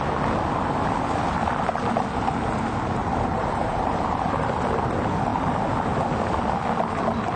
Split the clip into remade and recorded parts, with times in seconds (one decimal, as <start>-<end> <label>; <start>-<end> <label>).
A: 0.0-3.0 recorded; 3.0-4.5 remade; 4.5-5.3 recorded; 5.3-5.9 remade; 5.9-7.4 recorded